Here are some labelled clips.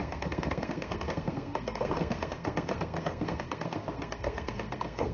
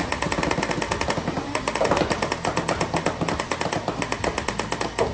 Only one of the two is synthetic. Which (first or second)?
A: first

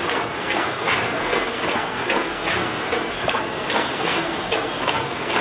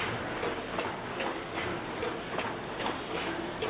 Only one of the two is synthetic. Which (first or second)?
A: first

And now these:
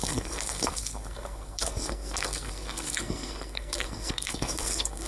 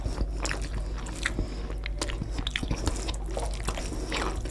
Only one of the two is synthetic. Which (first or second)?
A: first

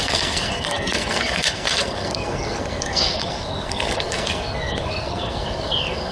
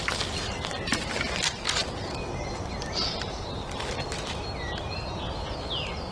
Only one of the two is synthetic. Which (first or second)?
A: first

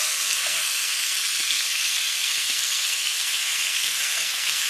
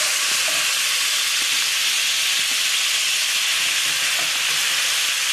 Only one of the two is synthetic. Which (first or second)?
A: first